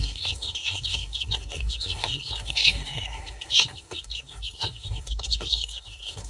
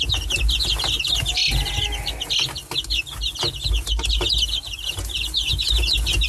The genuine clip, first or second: second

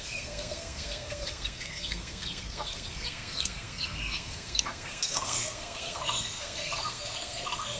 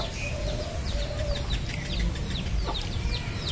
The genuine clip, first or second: second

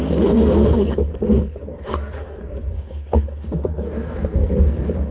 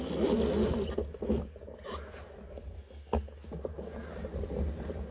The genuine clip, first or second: second